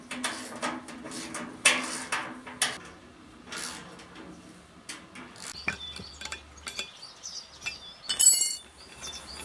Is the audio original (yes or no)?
yes